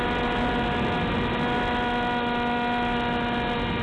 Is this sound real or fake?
real